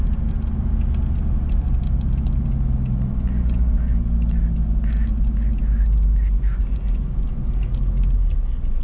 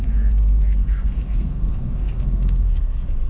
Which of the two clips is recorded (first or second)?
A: first